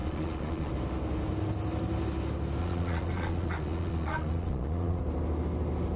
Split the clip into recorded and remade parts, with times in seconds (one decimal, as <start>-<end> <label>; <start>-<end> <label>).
0.0-0.7 remade; 0.7-2.6 recorded; 2.6-5.0 remade; 5.0-6.0 recorded